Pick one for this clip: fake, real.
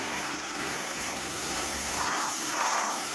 fake